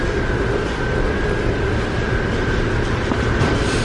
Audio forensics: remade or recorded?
remade